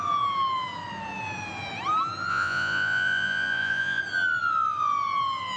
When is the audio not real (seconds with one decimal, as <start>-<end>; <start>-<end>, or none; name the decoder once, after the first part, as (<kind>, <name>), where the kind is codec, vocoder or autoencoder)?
2.3-4.0 (vocoder, Vocos)